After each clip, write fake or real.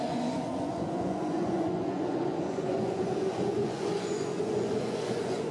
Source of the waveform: fake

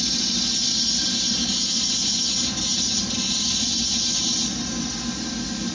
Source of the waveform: real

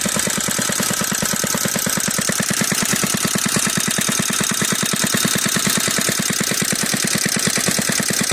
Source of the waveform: real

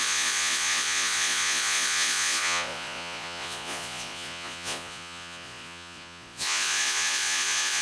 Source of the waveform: fake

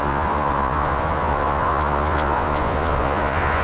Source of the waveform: fake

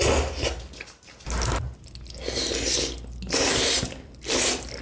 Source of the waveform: real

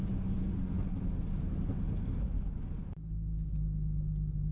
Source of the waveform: real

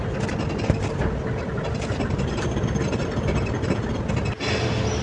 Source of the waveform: real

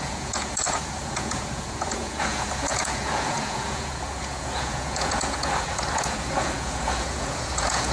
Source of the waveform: fake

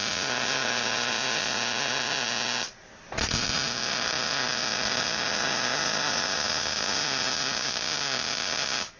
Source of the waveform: real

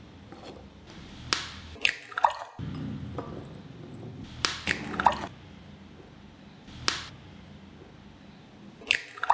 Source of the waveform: real